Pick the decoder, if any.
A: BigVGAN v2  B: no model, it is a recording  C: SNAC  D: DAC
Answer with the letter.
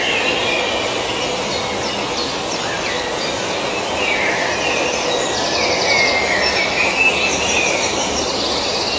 B